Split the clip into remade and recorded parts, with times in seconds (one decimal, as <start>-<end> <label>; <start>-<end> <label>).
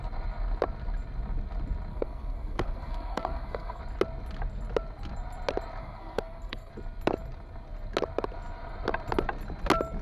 0.0-1.9 recorded; 1.9-3.8 remade; 3.8-5.8 recorded; 5.8-6.7 remade; 6.7-10.0 recorded